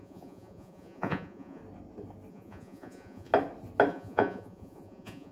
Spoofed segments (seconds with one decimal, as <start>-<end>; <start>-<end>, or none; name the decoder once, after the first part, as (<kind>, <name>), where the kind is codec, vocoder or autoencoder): 0.0-1.6 (vocoder, Vocos); 2.3-3.3; 3.9-5.3